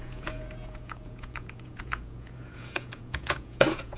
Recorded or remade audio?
remade